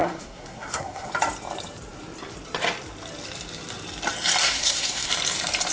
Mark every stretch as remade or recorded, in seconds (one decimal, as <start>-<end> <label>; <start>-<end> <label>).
0.0-1.1 remade; 1.1-4.4 recorded; 4.4-5.1 remade; 5.1-5.7 recorded